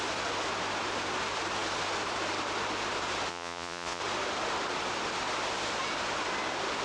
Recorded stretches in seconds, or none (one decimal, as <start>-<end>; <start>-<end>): 0.0-3.3; 4.0-6.8